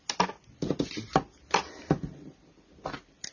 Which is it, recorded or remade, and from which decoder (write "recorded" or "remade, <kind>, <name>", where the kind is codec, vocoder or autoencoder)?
recorded